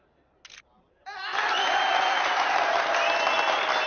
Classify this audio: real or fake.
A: real